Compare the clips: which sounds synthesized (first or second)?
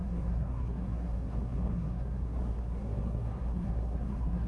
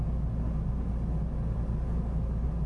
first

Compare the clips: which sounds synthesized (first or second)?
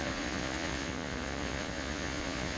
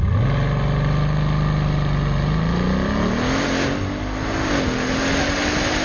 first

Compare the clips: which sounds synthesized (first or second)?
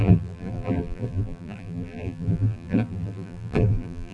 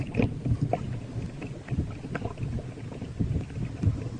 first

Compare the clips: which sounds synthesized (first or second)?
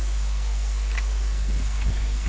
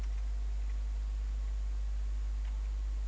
first